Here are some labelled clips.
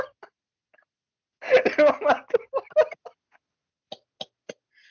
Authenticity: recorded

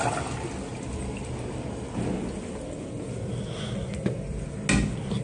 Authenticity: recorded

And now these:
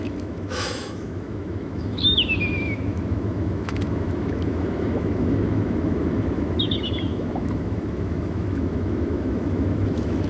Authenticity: remade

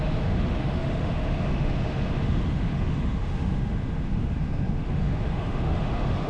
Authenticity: remade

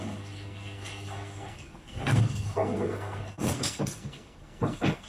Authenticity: remade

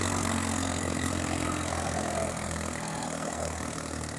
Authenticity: remade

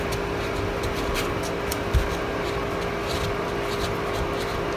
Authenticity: recorded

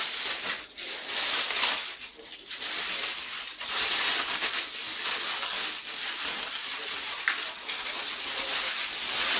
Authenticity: recorded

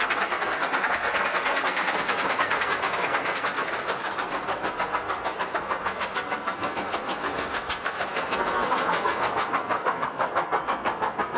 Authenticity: remade